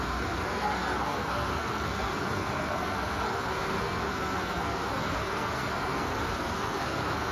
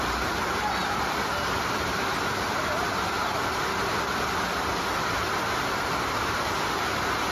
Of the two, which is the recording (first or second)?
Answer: second